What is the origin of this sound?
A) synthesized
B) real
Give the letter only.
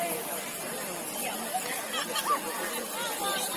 B